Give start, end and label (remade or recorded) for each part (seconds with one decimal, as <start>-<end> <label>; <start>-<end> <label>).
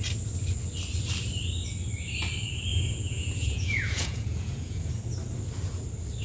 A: 0.0-2.7 recorded; 2.7-4.9 remade; 4.9-6.2 recorded